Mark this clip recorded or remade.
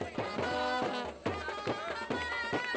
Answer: recorded